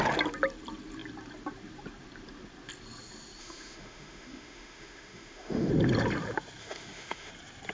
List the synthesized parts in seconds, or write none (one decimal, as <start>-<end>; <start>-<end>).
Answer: 3.4-5.7; 6.6-7.3